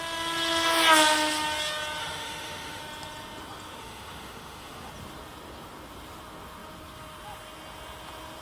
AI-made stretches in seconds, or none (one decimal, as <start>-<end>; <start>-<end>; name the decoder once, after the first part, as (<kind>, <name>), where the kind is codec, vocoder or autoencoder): 2.0-2.8 (autoencoder, DAC-VAE); 3.8-4.9